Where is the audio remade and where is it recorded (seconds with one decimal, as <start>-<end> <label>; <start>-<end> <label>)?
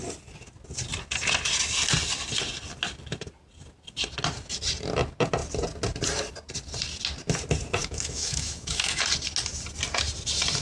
0.0-7.8 recorded; 7.8-9.0 remade; 9.0-10.6 recorded